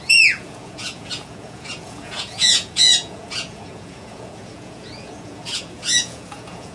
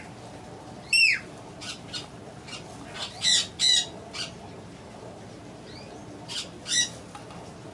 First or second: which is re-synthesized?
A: first